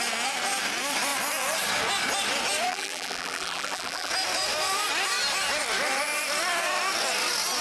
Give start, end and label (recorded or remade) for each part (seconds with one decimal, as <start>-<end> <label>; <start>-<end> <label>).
0.0-2.7 recorded; 2.7-4.1 remade; 4.1-7.6 recorded